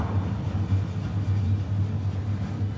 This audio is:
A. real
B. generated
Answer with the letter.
A